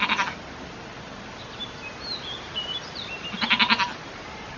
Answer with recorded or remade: recorded